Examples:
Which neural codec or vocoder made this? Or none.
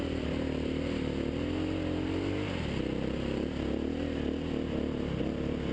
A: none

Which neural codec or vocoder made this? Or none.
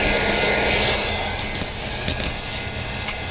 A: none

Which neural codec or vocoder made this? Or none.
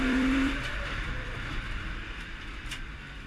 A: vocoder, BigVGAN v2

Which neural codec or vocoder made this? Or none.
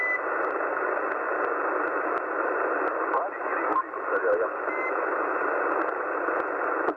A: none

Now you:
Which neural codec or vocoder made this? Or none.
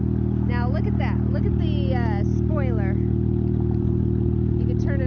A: none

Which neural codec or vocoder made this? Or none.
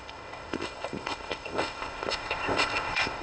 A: codec, ZipCodec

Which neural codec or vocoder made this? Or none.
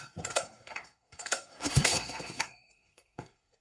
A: codec, SNAC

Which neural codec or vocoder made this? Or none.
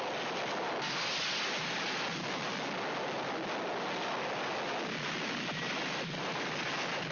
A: none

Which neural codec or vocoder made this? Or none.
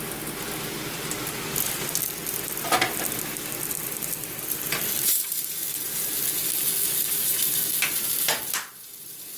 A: none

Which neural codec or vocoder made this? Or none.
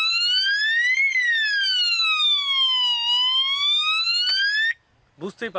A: none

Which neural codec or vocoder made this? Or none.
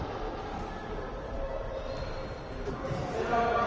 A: none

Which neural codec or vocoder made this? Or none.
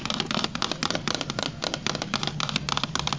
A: none